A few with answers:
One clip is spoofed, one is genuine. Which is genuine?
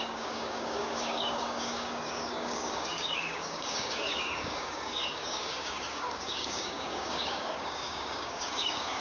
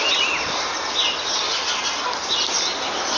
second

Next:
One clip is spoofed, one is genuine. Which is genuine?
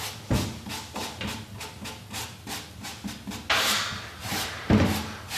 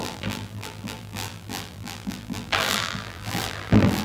first